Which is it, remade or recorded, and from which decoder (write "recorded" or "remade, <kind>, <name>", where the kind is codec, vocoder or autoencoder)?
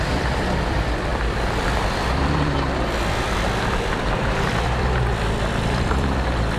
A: remade, vocoder, BigVGAN v2